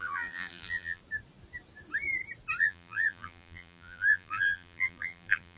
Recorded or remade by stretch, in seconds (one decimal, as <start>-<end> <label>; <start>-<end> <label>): 0.0-1.0 remade; 1.0-2.6 recorded; 2.6-5.6 remade